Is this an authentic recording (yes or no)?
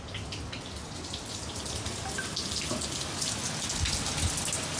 yes